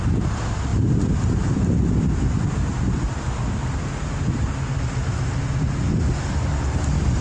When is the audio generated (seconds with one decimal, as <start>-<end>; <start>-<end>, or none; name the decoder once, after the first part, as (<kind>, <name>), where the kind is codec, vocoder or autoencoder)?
0.7-2.2 (vocoder, BigVGAN v2); 5.4-6.5